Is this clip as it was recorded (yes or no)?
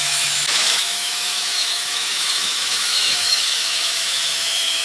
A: no